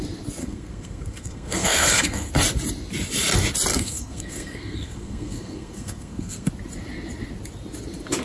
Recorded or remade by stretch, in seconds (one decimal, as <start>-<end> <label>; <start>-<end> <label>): 0.0-0.4 recorded; 0.4-2.3 remade; 2.3-3.7 recorded; 3.7-6.5 remade; 6.5-8.2 recorded

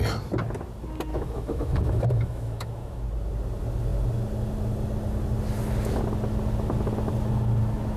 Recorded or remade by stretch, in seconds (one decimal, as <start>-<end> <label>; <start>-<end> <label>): 0.0-1.1 recorded; 1.1-3.0 remade; 3.0-8.0 recorded

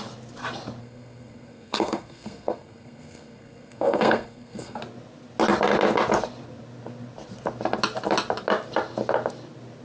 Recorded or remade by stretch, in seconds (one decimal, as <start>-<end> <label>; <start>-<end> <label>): 0.0-0.8 recorded; 0.8-4.8 remade; 4.8-9.8 recorded

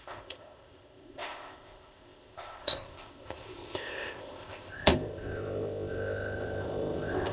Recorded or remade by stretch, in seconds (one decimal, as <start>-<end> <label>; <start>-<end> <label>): 0.0-7.3 remade

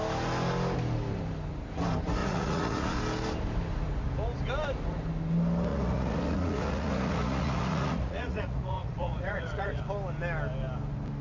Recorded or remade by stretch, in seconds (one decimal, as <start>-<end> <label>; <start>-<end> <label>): 0.0-2.2 recorded; 2.2-3.0 remade; 3.0-5.7 recorded; 5.7-9.8 remade; 9.8-11.2 recorded

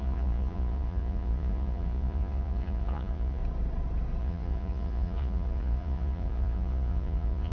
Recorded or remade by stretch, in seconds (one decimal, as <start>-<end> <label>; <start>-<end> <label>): 0.0-3.4 remade; 3.4-4.2 recorded; 4.2-7.5 remade

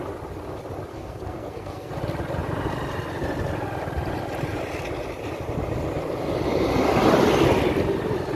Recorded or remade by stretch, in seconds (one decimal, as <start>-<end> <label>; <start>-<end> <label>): 0.0-0.9 recorded; 0.9-1.9 remade; 1.9-8.3 recorded